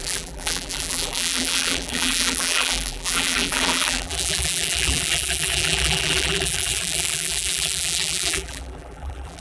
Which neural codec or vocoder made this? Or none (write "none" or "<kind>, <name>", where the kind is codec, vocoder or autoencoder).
vocoder, BigVGAN v2